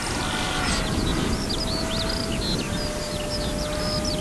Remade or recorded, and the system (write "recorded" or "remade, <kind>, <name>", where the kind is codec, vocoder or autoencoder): recorded